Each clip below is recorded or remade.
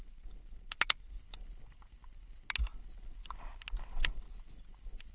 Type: recorded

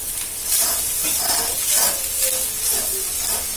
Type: recorded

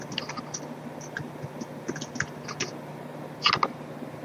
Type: recorded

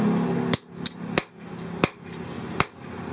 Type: recorded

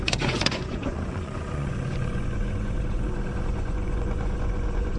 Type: remade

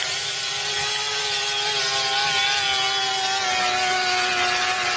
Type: recorded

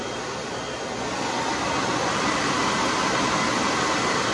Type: recorded